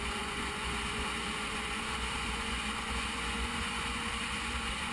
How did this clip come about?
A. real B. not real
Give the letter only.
B